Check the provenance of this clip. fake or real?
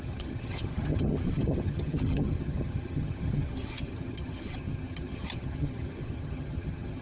fake